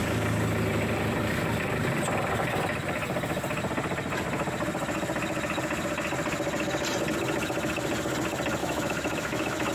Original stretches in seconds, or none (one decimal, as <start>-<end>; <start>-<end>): 0.0-8.6